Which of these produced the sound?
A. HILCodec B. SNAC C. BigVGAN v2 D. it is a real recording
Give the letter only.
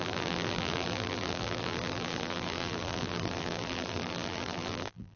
C